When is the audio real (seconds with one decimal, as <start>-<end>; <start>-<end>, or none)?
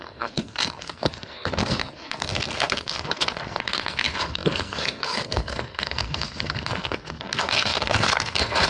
none